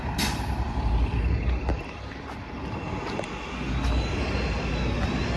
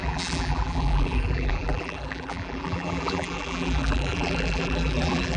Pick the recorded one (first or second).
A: first